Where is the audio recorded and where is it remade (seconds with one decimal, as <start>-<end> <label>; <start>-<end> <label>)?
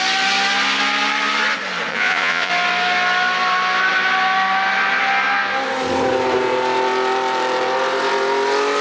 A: 0.0-1.9 recorded; 1.9-2.5 remade; 2.5-8.8 recorded